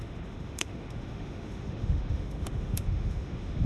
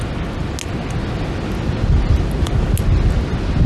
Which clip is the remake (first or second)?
first